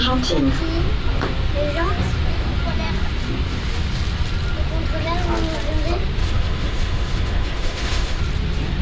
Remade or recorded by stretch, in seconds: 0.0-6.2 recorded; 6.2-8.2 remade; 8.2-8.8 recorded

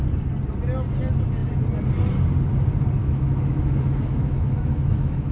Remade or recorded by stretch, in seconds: 0.0-3.0 recorded; 3.0-5.3 remade

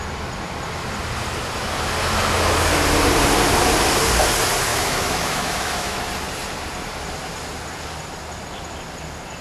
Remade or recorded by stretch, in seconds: 0.0-4.7 recorded; 4.7-6.0 remade; 6.0-9.4 recorded

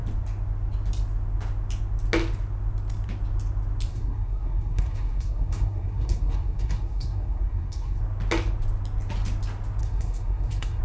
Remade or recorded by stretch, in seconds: 0.0-3.9 recorded; 3.9-8.0 remade; 8.0-9.8 recorded; 9.8-10.8 remade